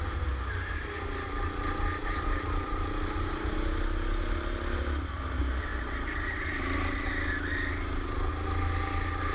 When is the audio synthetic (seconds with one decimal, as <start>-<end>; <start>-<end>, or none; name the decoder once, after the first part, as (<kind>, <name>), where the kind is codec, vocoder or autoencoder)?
2.0-3.5 (vocoder, BigVGAN v2)